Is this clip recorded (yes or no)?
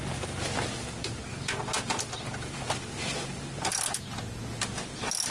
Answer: yes